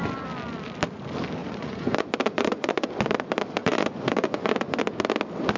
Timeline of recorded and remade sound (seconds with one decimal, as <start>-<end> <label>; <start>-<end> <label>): 0.0-1.4 recorded; 1.4-2.9 remade; 2.9-3.6 recorded; 3.6-4.8 remade; 4.8-5.6 recorded